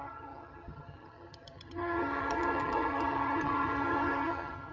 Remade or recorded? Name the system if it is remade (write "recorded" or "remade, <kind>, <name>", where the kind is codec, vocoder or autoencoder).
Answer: remade, vocoder, HiFi-GAN